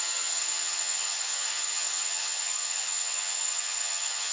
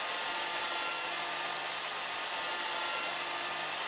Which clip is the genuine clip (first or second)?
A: second